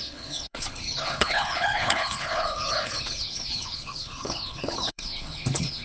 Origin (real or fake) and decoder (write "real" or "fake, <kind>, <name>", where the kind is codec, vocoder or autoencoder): fake, codec, HILCodec